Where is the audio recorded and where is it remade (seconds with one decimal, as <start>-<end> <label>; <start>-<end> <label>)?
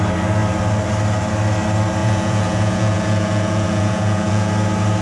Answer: 0.0-2.0 recorded; 2.0-4.5 remade; 4.5-5.0 recorded